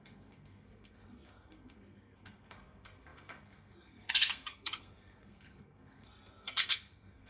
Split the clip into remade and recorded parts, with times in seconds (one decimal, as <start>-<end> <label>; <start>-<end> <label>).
0.0-7.3 remade